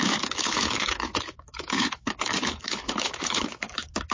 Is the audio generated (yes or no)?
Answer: yes